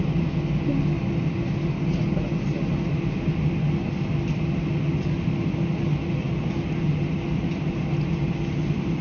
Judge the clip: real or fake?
real